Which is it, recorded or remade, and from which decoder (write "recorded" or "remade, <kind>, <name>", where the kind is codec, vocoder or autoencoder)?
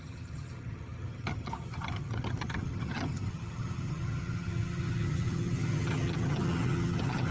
remade, vocoder, HiFi-GAN